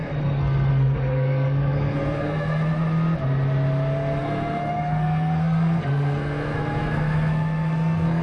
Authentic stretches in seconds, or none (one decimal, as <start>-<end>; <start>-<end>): 2.6-4.2